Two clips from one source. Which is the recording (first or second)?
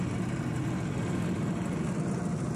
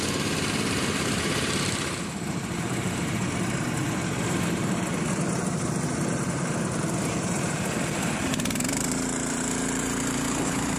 first